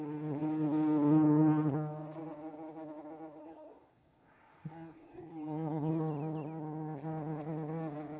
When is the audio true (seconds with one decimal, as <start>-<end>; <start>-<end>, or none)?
0.0-3.4; 5.9-8.2

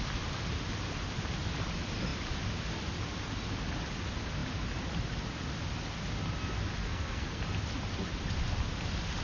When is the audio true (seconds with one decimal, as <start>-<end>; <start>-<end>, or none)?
0.0-6.8; 7.4-9.2

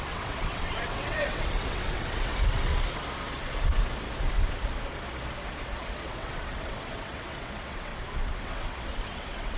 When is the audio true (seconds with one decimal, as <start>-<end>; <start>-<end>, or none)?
2.7-5.8; 7.9-8.4

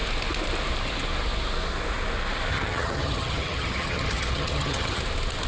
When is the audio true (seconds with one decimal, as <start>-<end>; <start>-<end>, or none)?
0.0-2.5; 5.0-5.5

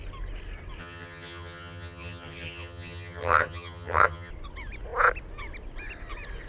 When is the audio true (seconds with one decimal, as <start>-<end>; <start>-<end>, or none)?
0.0-0.8; 4.3-6.5